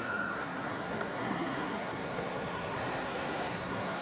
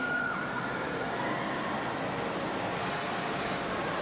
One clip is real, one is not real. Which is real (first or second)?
second